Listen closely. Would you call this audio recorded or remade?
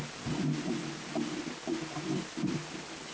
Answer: recorded